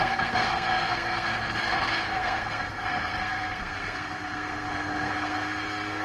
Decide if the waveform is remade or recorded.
remade